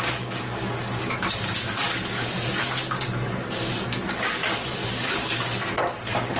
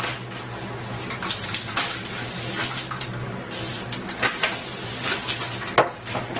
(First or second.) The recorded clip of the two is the second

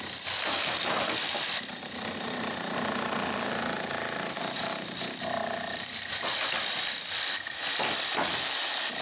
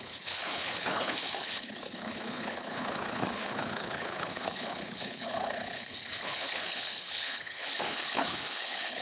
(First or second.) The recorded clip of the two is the first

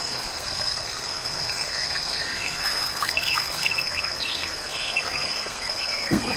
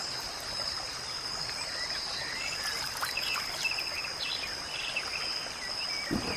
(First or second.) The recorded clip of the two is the second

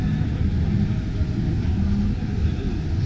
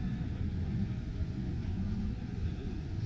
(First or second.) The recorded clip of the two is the first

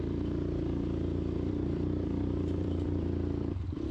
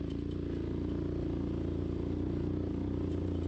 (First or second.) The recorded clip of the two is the second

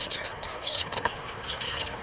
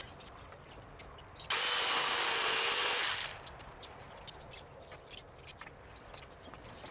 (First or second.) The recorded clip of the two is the second